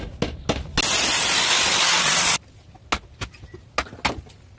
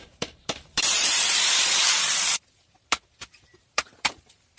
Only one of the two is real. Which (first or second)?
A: first